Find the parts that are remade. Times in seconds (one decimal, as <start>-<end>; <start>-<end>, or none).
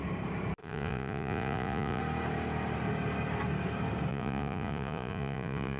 0.6-2.0; 4.1-5.8